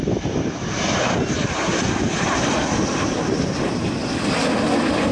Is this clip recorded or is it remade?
recorded